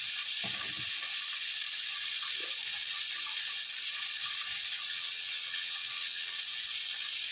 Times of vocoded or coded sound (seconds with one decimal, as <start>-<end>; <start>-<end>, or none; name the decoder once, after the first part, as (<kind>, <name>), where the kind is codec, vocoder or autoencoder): 4.9-6.4 (vocoder, WaveNeXt)